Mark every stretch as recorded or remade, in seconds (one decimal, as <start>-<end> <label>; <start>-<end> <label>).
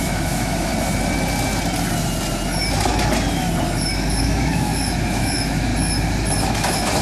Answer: 0.0-0.7 remade; 0.7-4.2 recorded; 4.2-5.7 remade; 5.7-6.4 recorded; 6.4-7.0 remade